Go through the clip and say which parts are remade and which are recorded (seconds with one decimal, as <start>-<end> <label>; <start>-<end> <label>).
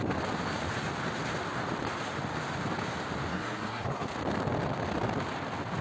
0.0-3.3 recorded; 3.3-4.1 remade; 4.1-5.8 recorded